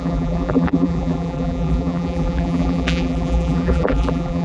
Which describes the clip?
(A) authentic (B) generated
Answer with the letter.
B